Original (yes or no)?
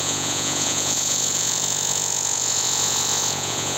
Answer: no